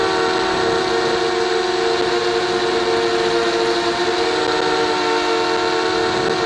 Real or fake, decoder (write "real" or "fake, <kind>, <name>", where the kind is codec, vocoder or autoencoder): real